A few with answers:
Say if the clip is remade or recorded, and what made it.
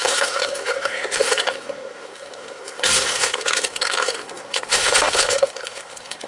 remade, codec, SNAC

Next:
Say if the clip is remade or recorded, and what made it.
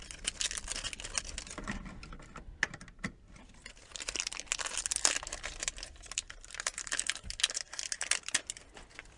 recorded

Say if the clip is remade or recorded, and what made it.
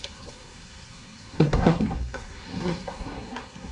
remade, codec, SNAC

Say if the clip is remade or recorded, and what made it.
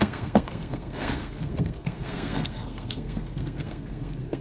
remade, codec, SNAC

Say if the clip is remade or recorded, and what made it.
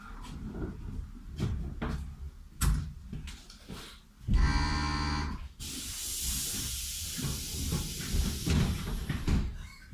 recorded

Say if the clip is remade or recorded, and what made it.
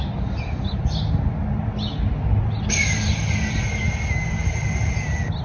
recorded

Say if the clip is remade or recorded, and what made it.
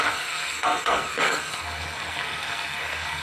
remade, codec, SNAC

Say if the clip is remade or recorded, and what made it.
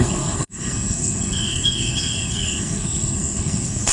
remade, codec, SNAC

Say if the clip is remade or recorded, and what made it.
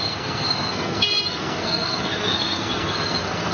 remade, codec, SNAC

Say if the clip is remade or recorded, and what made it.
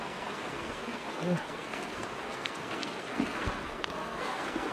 remade, codec, SNAC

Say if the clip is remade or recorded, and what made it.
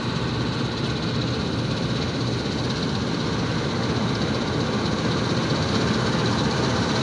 recorded